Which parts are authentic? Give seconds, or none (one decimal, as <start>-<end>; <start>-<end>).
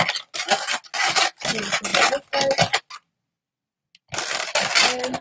0.0-5.2